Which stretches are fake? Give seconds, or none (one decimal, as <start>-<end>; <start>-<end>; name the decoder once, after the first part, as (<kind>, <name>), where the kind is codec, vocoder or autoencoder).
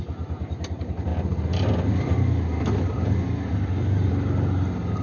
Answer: none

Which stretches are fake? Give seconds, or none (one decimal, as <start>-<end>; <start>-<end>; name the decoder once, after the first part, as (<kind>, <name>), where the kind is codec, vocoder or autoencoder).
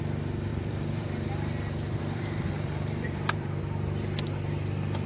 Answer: 0.5-3.6 (vocoder, BigVGAN v2)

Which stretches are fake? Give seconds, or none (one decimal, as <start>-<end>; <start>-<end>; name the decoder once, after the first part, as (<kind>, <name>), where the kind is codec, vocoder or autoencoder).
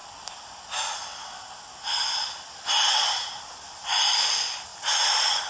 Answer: 0.0-4.7 (vocoder, BigVGAN v2)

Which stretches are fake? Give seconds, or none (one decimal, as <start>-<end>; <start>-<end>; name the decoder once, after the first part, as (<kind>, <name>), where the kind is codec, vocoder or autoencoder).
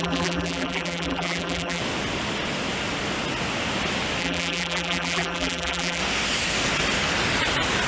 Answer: 0.0-1.8 (vocoder, BigVGAN v2); 4.2-6.0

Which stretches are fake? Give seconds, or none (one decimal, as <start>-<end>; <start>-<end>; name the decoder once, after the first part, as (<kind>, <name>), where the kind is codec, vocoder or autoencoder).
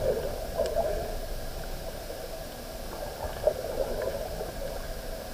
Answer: none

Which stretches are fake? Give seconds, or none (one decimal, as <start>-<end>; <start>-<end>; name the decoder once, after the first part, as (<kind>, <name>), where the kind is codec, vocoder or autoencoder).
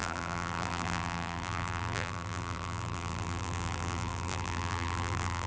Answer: 0.0-5.5 (vocoder, BigVGAN v2)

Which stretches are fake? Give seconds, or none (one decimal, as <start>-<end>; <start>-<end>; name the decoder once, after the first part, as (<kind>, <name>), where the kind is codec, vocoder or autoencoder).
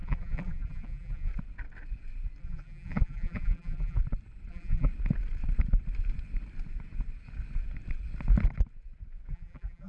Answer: 0.0-1.3 (vocoder, BigVGAN v2); 2.4-4.0; 4.5-4.9; 9.3-9.9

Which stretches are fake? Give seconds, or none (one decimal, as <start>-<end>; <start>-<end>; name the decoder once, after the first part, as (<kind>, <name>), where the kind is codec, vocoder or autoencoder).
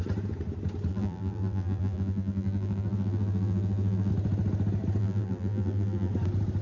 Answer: 0.9-4.1 (vocoder, BigVGAN v2); 5.0-6.1